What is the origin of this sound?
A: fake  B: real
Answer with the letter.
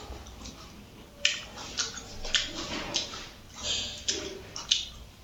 B